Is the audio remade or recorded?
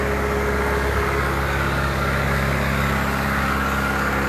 remade